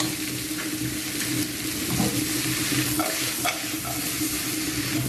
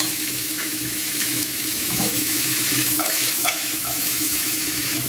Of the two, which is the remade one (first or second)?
second